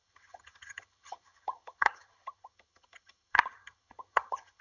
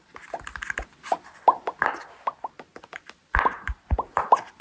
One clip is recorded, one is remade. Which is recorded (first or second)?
second